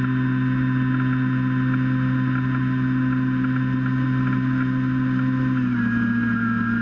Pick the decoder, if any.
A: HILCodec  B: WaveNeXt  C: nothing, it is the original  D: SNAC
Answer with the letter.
C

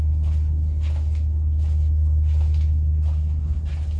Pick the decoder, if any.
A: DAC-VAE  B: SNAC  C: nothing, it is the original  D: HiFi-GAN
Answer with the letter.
C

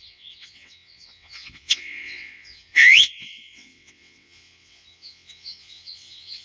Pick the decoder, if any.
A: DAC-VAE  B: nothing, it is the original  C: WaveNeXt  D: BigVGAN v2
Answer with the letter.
C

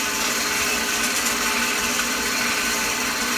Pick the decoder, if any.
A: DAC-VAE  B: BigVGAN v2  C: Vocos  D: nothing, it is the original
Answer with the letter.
B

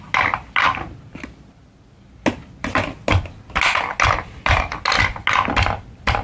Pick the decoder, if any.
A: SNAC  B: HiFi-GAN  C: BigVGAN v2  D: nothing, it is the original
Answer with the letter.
D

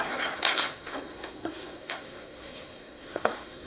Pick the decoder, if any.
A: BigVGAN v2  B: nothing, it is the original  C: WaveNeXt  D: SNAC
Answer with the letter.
D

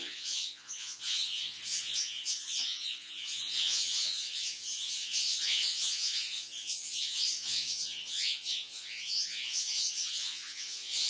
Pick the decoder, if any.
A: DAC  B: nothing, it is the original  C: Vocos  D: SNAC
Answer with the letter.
C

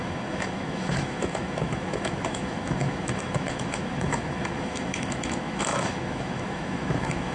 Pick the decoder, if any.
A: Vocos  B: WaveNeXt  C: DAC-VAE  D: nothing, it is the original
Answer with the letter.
C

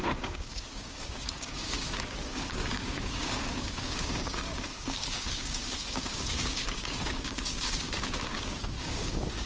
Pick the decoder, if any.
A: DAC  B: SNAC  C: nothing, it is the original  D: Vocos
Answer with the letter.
A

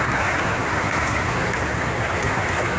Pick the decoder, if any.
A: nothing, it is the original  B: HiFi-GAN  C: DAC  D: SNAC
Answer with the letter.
D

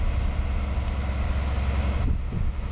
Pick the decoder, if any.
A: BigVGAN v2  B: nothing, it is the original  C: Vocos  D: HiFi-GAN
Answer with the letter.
B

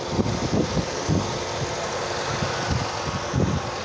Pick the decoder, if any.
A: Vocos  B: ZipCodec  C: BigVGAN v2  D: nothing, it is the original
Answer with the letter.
D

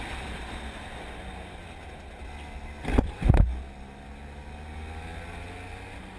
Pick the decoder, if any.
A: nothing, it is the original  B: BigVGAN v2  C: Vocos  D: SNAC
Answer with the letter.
A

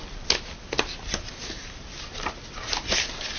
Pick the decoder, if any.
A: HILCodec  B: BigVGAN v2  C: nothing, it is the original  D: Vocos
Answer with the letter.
C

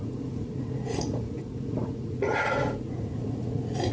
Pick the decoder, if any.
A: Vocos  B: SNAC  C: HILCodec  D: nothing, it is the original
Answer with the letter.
A